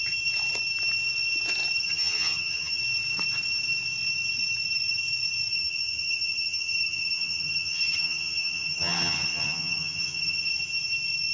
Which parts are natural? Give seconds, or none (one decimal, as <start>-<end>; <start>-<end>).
0.0-1.8; 2.8-5.5; 10.5-11.3